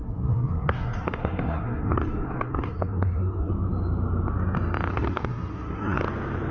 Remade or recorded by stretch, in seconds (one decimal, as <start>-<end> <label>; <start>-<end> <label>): 0.0-3.5 remade; 3.5-4.9 recorded; 4.9-6.0 remade; 6.0-6.5 recorded